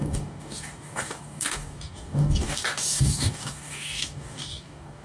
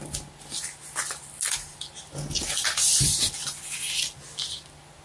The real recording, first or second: second